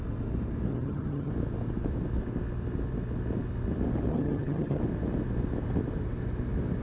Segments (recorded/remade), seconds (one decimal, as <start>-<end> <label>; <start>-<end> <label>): 0.0-0.7 recorded; 0.7-1.3 remade; 1.3-4.1 recorded; 4.1-4.8 remade; 4.8-6.8 recorded